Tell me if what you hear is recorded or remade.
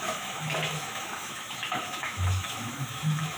remade